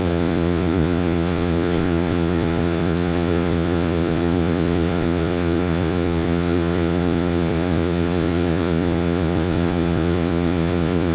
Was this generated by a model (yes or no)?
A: yes